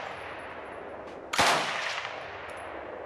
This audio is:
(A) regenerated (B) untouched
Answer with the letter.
B